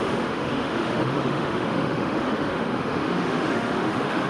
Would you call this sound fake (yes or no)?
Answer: yes